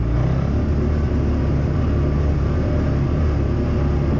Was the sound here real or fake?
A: real